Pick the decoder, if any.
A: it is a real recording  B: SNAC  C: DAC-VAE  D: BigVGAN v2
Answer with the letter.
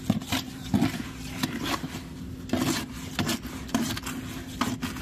A